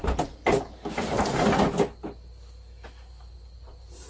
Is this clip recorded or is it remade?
recorded